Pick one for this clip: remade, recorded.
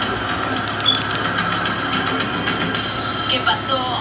recorded